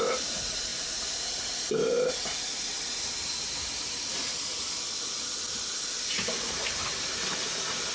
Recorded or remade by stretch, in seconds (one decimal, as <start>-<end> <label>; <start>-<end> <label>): 0.0-7.9 recorded